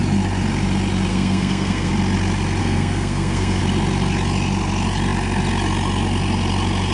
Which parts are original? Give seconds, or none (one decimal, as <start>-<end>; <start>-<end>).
0.0-1.1; 1.9-2.6; 3.6-6.9